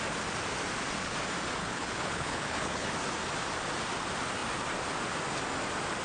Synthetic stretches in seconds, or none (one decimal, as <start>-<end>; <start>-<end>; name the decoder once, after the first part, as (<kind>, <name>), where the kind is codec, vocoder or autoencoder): 1.6-2.9 (codec, HILCodec)